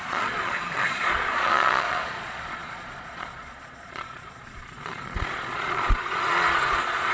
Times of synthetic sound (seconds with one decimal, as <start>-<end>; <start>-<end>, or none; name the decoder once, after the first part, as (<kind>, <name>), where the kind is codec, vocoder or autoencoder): 0.0-7.1 (vocoder, Vocos)